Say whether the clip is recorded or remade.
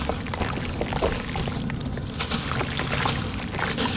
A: recorded